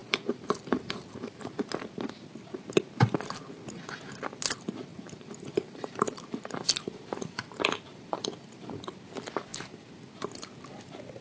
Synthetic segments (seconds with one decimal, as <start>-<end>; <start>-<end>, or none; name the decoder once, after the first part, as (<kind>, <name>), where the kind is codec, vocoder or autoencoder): 0.0-1.6 (vocoder, BigVGAN v2); 4.9-8.8